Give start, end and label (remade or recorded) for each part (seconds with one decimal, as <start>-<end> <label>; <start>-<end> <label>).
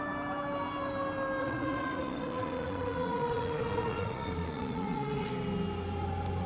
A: 0.0-1.4 recorded; 1.4-5.3 remade; 5.3-6.5 recorded